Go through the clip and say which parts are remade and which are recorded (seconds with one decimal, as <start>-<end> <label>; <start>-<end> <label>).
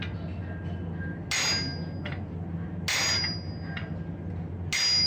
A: 0.0-5.1 recorded